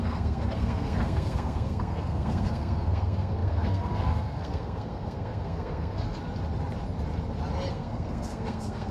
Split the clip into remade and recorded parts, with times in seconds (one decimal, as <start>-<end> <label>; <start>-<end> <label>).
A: 0.0-6.2 remade; 6.2-7.7 recorded; 7.7-8.9 remade